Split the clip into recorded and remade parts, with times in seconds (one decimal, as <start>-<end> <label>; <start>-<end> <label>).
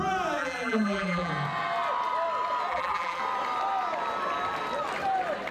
0.0-0.4 recorded; 0.4-1.3 remade; 1.3-2.7 recorded; 2.7-3.2 remade; 3.2-5.5 recorded